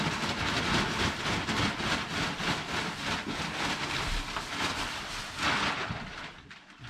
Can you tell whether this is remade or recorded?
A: recorded